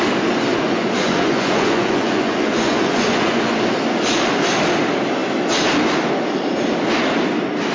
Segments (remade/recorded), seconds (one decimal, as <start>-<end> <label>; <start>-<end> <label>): 0.0-0.5 recorded; 0.5-3.5 remade; 3.5-7.7 recorded